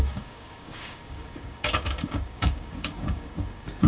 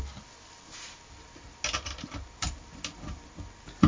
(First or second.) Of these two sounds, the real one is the second